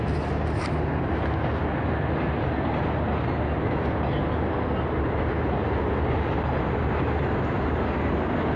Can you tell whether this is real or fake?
real